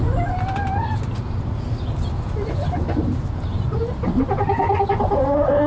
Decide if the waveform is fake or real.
real